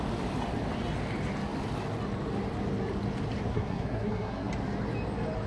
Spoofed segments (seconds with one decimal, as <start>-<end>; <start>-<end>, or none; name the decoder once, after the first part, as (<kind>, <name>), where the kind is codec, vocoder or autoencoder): 3.5-4.5 (codec, SNAC)